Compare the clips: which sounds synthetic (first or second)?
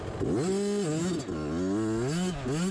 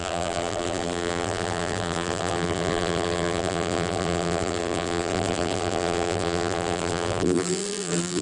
second